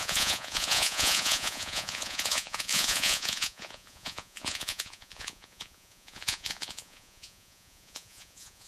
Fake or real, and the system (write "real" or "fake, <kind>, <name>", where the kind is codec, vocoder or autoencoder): fake, vocoder, Vocos